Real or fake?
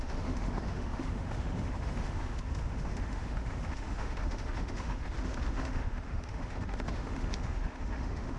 fake